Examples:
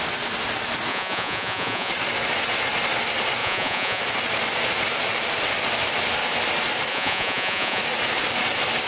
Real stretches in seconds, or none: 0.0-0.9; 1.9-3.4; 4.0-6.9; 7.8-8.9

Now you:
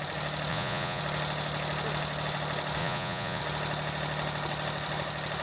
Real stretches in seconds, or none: 0.0-0.5; 1.0-2.8; 3.4-5.4

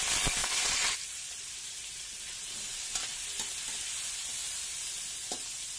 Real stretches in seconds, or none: 0.0-0.4; 0.9-5.8

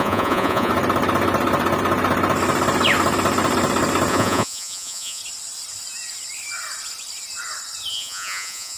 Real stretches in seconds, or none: 0.7-4.1; 5.2-7.9

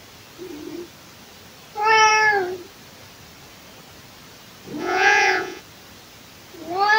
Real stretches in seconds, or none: 0.0-4.8; 5.6-7.0

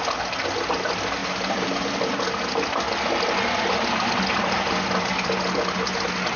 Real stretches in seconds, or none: 0.0-6.4